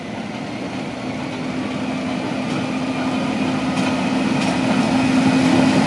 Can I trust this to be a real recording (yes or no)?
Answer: yes